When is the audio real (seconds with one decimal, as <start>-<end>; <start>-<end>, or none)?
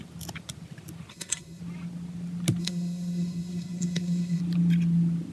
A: 0.0-1.1; 1.6-2.6; 4.4-5.3